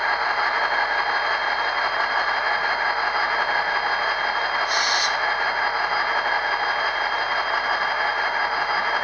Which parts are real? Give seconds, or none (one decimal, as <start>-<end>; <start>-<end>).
0.0-9.0